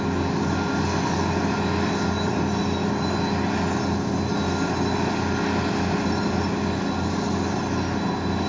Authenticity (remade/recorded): recorded